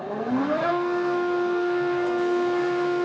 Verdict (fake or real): fake